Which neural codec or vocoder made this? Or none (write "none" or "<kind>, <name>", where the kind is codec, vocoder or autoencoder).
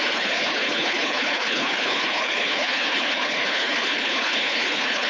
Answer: codec, HILCodec